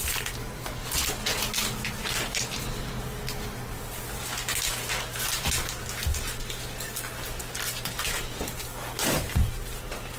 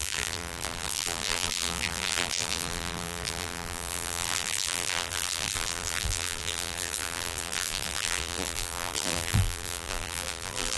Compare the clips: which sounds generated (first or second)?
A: second